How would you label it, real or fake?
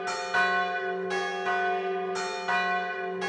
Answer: real